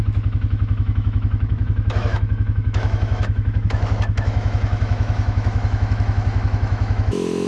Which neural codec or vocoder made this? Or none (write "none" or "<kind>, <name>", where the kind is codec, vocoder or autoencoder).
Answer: autoencoder, DAC-VAE